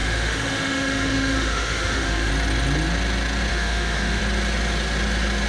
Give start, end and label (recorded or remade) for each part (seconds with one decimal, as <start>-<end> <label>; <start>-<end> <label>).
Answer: 0.0-2.3 remade; 2.3-3.5 recorded; 3.5-4.2 remade; 4.2-5.5 recorded